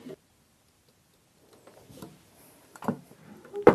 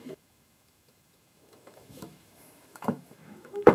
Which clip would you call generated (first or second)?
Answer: second